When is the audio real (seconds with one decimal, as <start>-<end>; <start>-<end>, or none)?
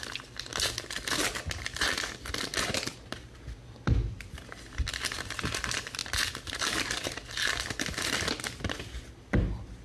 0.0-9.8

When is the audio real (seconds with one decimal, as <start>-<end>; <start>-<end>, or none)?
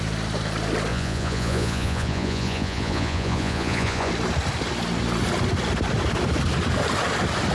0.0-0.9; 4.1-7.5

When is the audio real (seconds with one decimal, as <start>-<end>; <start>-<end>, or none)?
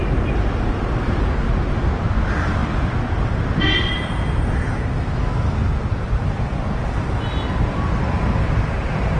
0.0-2.6; 3.6-5.7; 8.2-9.2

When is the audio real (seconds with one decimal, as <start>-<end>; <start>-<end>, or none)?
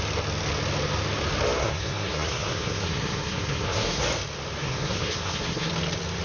0.0-1.6; 4.0-4.6; 5.7-6.2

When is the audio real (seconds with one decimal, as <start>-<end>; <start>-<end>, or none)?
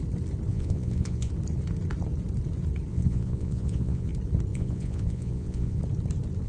0.0-0.5; 1.3-2.9; 4.1-4.5; 5.8-6.5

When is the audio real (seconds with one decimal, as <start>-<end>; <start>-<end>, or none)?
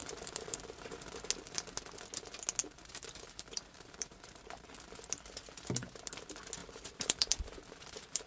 1.3-2.6; 4.7-6.6